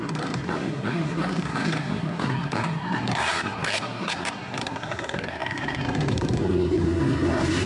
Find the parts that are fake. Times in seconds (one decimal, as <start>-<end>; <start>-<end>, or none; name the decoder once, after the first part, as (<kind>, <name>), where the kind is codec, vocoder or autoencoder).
0.0-7.7 (codec, SNAC)